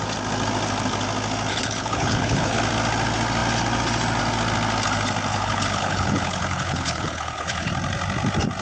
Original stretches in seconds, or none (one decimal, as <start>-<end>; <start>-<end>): 0.0-1.5; 2.6-5.3; 7.7-8.6